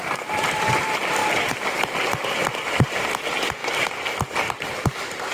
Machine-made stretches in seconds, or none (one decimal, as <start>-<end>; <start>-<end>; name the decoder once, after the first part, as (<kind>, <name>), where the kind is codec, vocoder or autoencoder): 0.0-3.6 (vocoder, BigVGAN v2); 4.4-5.3